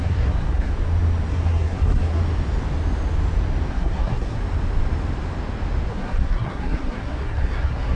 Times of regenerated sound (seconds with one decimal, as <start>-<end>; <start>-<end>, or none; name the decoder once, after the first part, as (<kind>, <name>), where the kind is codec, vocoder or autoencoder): 0.0-0.7 (codec, SNAC); 1.3-2.2; 3.7-4.4; 5.9-7.9